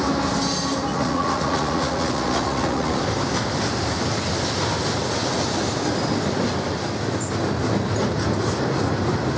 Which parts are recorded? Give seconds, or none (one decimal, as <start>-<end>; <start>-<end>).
0.0-0.9; 3.0-9.4